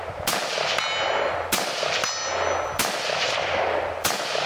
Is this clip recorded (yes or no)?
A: yes